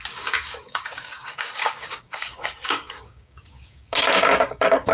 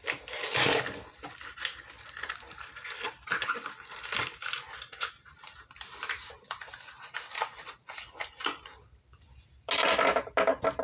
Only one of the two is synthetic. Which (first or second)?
first